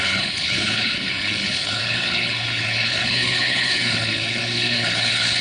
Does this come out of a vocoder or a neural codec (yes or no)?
yes